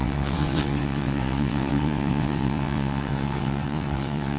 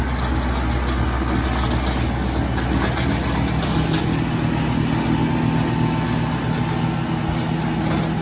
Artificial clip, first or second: first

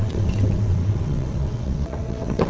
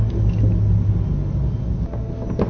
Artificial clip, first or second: first